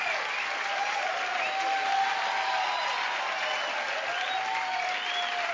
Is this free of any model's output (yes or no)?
yes